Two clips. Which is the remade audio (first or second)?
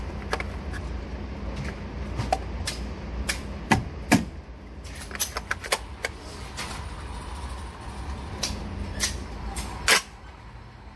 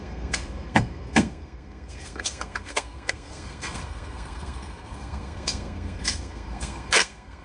second